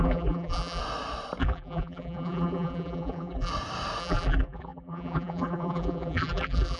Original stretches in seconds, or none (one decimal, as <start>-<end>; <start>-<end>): 0.8-1.4; 3.5-4.0